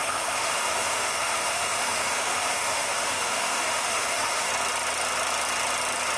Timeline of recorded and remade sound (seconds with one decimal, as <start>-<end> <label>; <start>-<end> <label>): 0.0-4.5 remade; 4.5-6.2 recorded

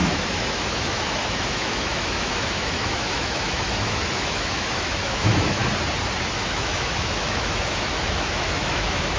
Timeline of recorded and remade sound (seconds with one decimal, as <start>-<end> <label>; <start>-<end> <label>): 0.0-5.6 remade; 5.6-6.3 recorded; 6.3-9.2 remade

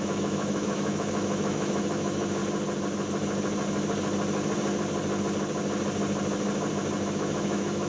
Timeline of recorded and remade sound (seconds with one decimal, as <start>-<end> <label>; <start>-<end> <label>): 0.0-2.4 remade; 2.4-7.1 recorded; 7.1-7.9 remade

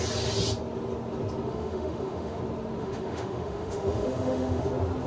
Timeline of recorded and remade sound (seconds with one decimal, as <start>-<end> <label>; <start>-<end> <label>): 0.0-1.5 recorded; 1.5-2.4 remade; 2.4-2.8 recorded; 2.8-4.6 remade; 4.6-5.1 recorded

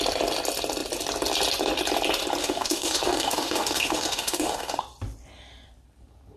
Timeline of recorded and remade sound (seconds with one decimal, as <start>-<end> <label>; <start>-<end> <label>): 0.0-2.4 recorded; 2.4-4.8 remade; 4.8-6.4 recorded